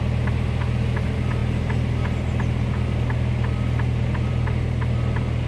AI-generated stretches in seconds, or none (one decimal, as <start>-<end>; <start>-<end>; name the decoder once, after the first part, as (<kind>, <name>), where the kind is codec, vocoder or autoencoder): none